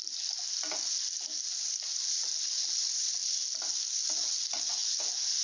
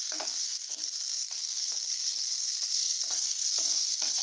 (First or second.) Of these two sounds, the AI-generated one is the second